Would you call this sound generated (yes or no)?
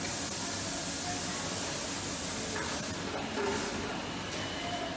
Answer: no